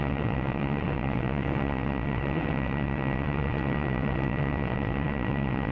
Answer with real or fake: fake